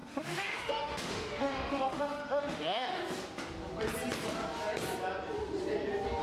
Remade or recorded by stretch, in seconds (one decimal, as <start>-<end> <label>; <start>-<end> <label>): 0.0-3.0 remade; 3.0-6.2 recorded